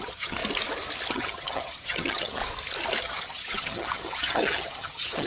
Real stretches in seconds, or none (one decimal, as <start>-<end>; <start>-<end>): 0.4-1.1; 2.4-3.0